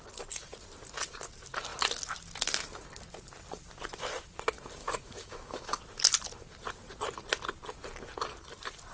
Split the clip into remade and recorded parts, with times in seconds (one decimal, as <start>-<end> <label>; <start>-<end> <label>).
0.0-4.8 recorded; 4.8-5.8 remade; 5.8-8.9 recorded